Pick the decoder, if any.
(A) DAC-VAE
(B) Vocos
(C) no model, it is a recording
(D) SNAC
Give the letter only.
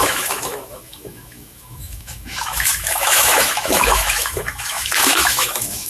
A